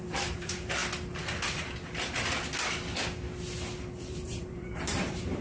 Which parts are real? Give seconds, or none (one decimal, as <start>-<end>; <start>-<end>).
0.8-4.0